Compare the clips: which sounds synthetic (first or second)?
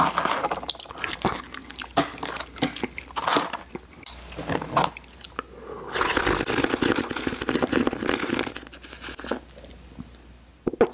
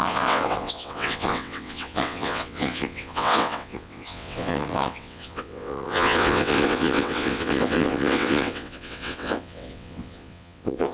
second